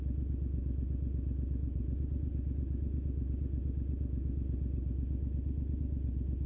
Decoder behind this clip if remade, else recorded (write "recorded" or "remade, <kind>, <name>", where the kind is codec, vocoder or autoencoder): recorded